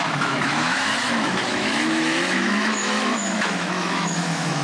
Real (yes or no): no